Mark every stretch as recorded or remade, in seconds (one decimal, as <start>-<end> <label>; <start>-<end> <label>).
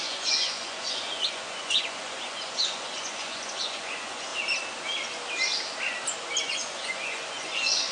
0.0-4.3 remade; 4.3-6.4 recorded; 6.4-7.9 remade